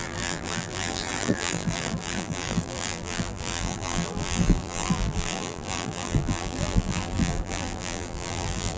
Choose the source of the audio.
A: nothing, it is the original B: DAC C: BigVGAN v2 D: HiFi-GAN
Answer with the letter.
C